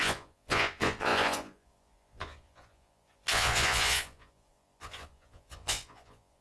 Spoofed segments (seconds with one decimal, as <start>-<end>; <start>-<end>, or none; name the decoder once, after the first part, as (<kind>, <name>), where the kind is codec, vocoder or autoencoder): 0.0-6.4 (vocoder, Vocos)